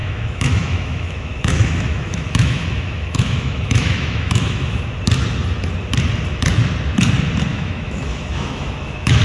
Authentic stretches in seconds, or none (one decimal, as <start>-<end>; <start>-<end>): 4.8-7.5